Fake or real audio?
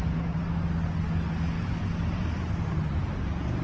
real